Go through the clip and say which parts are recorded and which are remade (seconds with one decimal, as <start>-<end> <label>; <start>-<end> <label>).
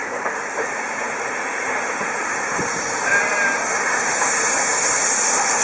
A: 0.0-0.9 remade; 0.9-5.6 recorded